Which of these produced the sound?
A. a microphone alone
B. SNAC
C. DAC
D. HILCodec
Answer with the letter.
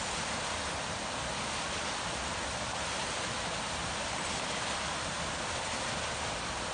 A